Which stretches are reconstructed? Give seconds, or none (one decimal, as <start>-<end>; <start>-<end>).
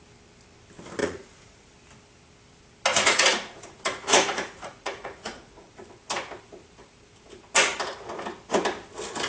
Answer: 1.0-1.7; 2.9-5.7